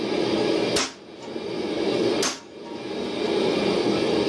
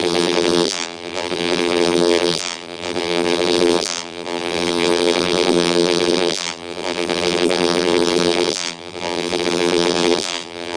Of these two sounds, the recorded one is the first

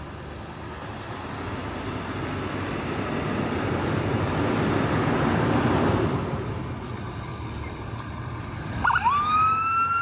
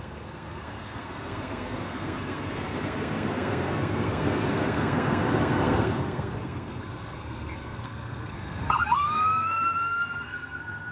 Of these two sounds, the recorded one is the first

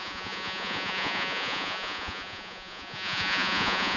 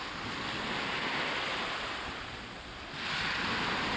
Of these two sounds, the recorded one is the second